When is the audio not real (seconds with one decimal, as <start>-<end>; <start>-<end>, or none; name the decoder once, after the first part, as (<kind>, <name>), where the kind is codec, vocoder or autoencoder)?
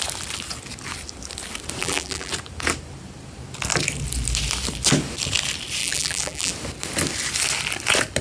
1.8-2.3 (vocoder, BigVGAN v2); 5.8-6.5